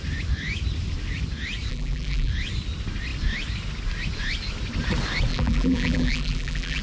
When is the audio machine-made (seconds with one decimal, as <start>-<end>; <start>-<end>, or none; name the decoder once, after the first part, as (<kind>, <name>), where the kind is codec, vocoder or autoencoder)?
1.7-2.3 (vocoder, BigVGAN v2); 5.3-6.8